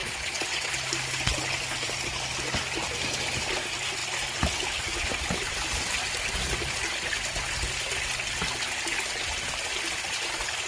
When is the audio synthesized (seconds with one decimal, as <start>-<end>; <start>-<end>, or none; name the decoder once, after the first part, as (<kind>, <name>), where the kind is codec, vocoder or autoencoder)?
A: 0.0-0.7 (vocoder, WaveNeXt)